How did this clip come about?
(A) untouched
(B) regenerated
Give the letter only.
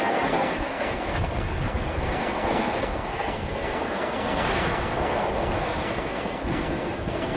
B